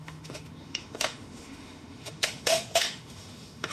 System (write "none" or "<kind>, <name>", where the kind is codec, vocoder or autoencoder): autoencoder, DAC-VAE